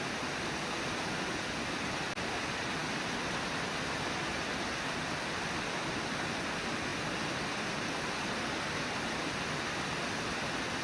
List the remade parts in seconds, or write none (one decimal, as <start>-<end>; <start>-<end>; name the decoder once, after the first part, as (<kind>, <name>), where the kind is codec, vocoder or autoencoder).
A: none